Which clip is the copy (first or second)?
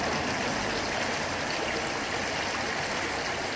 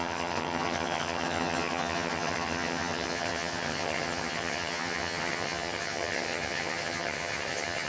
second